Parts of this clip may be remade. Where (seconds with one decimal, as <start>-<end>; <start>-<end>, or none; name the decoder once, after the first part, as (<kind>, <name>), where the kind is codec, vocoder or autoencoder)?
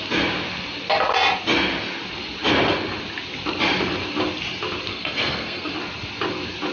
4.9-5.7 (codec, SNAC)